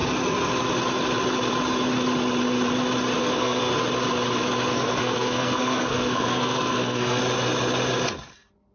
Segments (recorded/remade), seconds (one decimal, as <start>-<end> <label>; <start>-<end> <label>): 0.0-3.2 recorded; 3.2-3.7 remade; 3.7-4.7 recorded; 4.7-7.2 remade; 7.2-8.7 recorded